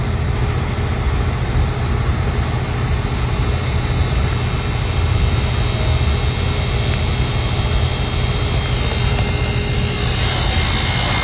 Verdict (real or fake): real